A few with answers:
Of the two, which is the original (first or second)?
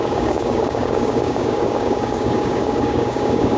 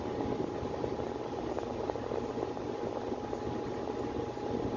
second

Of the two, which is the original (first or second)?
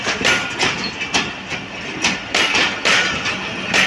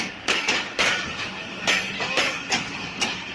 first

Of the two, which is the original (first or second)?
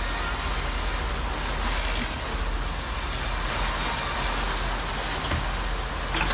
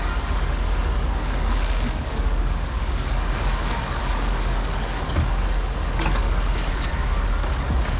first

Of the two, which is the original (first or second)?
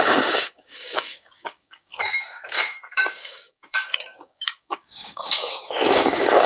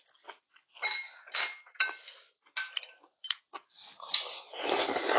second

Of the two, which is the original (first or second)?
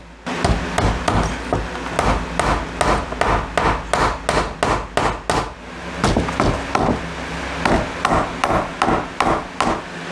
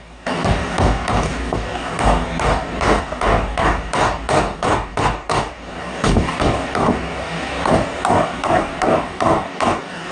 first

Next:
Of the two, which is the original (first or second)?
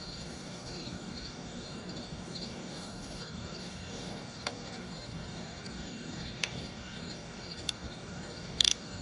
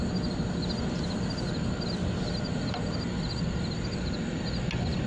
second